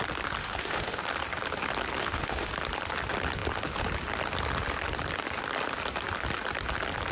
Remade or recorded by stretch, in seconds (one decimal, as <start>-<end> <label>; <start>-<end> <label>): 0.0-0.4 recorded; 0.4-1.0 remade; 1.0-2.0 recorded; 2.0-2.5 remade; 2.5-7.1 recorded